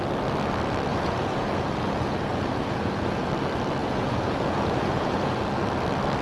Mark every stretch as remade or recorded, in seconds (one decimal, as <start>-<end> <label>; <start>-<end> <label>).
0.0-0.9 recorded; 0.9-3.3 remade; 3.3-3.8 recorded; 3.8-5.4 remade; 5.4-6.2 recorded